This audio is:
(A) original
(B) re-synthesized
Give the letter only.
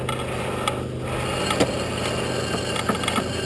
A